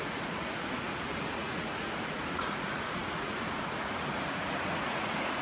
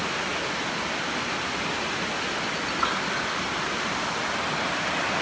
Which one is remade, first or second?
first